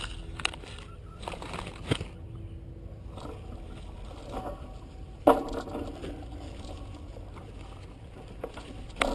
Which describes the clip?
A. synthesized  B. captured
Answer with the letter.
B